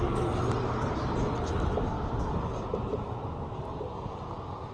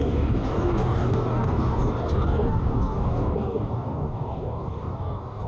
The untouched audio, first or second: first